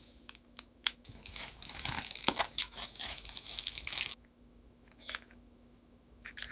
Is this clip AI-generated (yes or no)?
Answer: yes